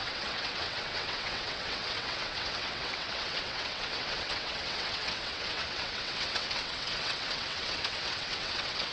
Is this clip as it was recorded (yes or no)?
no